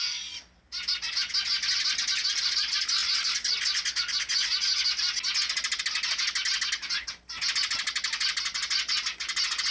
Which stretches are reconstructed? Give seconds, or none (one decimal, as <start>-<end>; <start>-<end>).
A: none